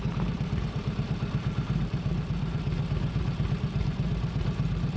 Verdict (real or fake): fake